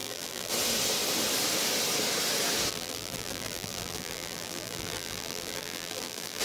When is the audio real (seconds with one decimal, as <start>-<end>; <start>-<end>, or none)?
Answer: 0.5-2.7

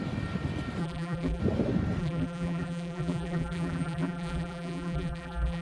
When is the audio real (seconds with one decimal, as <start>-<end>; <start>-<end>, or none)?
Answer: 0.0-0.8; 1.4-2.0

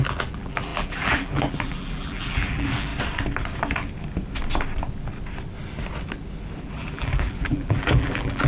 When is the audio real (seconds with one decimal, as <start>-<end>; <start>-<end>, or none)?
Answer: 2.9-6.6